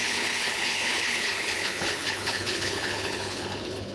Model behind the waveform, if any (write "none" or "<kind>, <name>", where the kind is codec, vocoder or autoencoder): codec, HILCodec